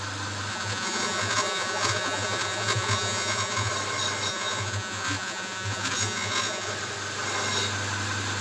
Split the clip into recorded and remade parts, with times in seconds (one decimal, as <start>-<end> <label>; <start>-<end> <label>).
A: 0.0-0.5 recorded; 0.5-3.7 remade; 3.7-4.3 recorded; 4.3-6.7 remade; 6.7-8.4 recorded